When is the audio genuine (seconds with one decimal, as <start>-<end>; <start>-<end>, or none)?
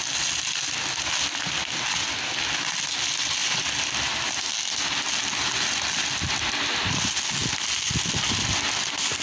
0.0-9.2